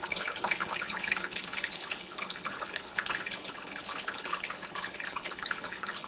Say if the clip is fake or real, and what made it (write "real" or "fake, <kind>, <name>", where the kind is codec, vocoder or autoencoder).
fake, codec, HILCodec